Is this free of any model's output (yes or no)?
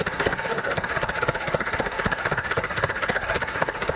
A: no